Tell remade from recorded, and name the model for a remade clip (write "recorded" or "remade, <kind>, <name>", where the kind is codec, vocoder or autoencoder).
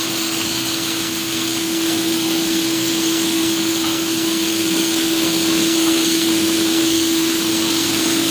remade, codec, SNAC